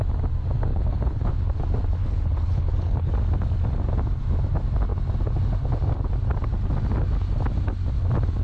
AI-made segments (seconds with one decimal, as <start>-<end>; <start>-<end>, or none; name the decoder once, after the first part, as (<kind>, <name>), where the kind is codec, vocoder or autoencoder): 0.7-1.3 (codec, HILCodec); 2.0-3.1